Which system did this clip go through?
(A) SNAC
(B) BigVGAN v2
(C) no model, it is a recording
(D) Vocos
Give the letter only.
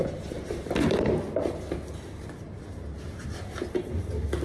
C